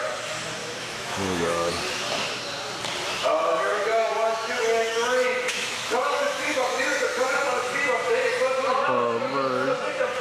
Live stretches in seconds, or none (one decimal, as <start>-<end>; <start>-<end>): 0.0-0.6; 1.7-3.3; 7.8-10.2